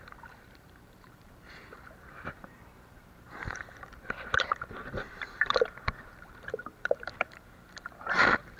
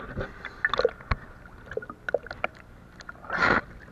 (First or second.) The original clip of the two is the second